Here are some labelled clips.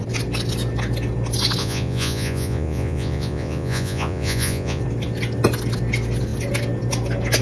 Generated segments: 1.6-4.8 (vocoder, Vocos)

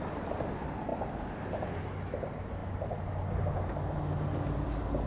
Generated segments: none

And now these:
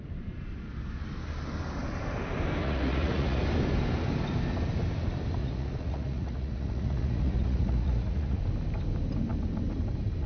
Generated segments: 2.6-3.4 (vocoder, Vocos); 5.4-8.4